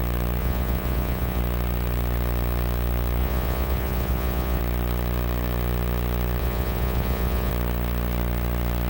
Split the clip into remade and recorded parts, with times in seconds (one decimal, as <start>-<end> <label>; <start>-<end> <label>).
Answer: 0.0-0.4 recorded; 0.4-1.4 remade; 1.4-3.2 recorded; 3.2-4.6 remade; 4.6-6.4 recorded; 6.4-7.5 remade; 7.5-8.9 recorded